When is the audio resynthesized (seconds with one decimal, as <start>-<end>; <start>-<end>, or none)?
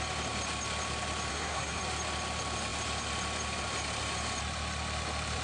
1.3-1.8